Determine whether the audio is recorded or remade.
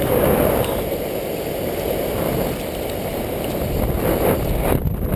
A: recorded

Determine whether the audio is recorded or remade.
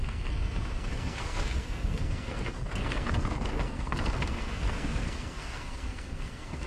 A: remade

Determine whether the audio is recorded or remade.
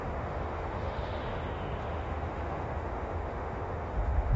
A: remade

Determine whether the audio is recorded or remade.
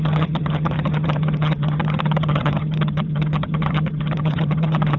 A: remade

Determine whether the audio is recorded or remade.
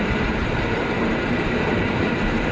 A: remade